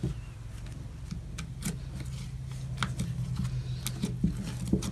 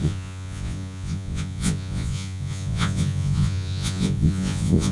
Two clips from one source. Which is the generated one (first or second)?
second